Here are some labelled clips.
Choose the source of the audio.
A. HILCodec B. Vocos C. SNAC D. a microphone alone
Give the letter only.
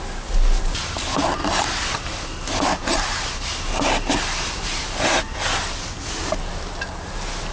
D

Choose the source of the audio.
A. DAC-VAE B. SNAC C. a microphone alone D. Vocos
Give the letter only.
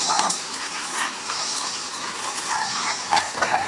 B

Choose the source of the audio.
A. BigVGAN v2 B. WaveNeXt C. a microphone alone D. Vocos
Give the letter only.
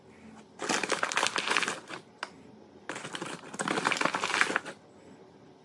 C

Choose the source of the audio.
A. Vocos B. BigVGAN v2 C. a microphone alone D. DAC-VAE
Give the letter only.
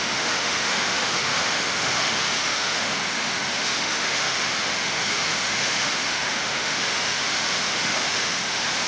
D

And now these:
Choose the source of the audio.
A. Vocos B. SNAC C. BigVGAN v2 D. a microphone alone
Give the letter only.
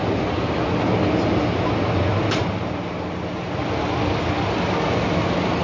D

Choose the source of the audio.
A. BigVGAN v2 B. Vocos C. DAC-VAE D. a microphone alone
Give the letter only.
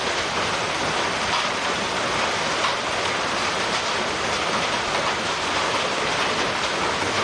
D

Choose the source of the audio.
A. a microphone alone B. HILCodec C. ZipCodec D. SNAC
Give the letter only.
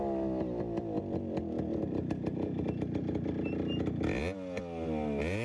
A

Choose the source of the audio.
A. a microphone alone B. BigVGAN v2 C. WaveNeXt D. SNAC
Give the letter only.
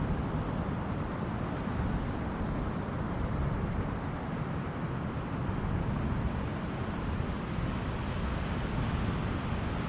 A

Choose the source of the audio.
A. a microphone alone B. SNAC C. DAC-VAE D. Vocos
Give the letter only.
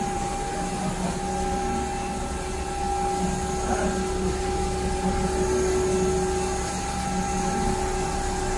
A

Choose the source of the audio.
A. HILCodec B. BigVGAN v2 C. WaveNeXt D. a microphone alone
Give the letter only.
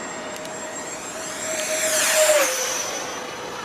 B